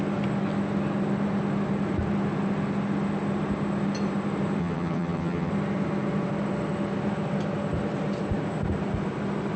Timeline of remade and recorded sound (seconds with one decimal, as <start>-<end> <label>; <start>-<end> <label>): 0.0-4.6 recorded; 4.6-5.5 remade; 5.5-9.6 recorded